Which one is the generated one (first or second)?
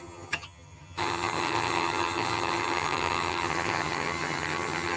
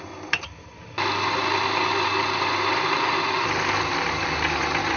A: first